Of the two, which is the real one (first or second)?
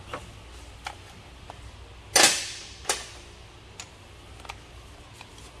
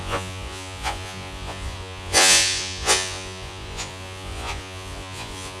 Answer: first